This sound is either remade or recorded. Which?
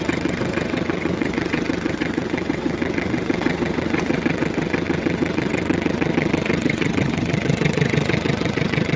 remade